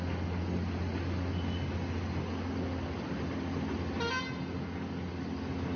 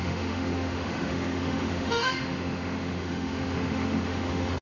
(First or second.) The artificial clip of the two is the second